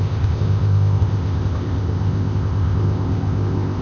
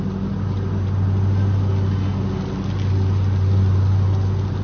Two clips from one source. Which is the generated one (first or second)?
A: first